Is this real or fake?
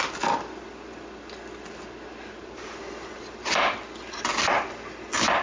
real